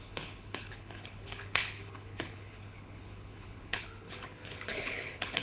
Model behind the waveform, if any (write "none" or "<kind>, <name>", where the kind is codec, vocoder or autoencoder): codec, HILCodec